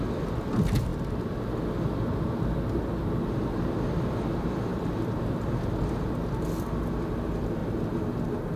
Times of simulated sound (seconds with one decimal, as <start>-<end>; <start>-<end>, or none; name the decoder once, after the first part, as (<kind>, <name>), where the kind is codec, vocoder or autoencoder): 4.7-5.4 (vocoder, BigVGAN v2)